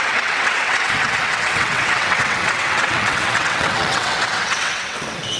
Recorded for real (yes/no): no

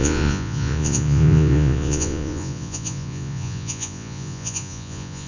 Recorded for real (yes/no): no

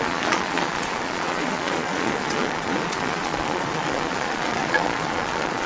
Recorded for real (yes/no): no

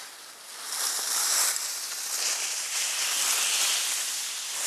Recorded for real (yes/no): yes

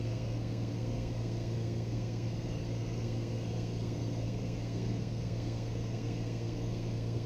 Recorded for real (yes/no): no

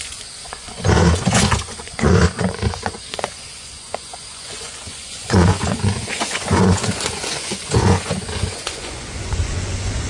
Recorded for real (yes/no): no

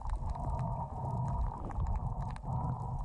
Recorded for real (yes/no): yes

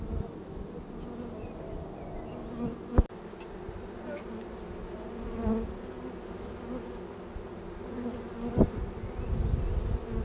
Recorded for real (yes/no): yes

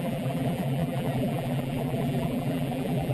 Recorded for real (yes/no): no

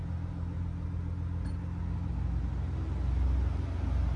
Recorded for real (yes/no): yes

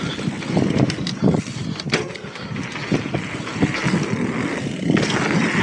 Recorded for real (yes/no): yes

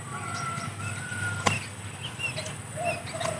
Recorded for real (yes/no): no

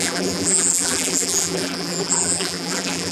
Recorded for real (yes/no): no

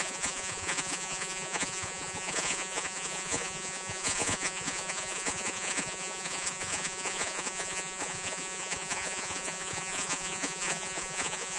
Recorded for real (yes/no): no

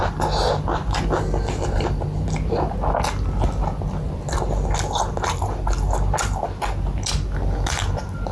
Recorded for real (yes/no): yes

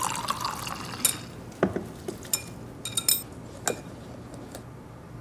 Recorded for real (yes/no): yes